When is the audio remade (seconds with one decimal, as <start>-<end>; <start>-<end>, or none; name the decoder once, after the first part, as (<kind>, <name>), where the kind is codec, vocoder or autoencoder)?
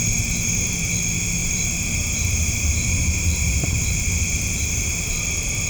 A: 1.4-3.9 (vocoder, BigVGAN v2)